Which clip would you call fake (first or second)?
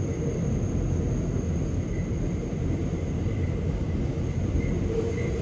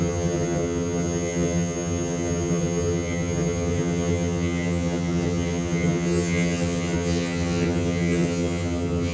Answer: second